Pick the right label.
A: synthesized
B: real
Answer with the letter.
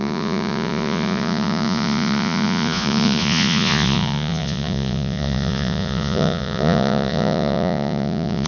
A